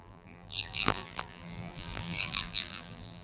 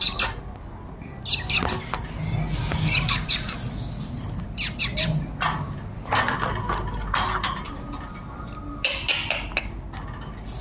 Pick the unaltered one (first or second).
second